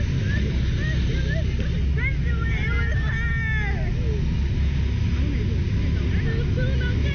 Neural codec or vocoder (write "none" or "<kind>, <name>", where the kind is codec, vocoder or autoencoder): none